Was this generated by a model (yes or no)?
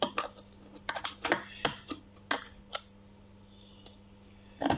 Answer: no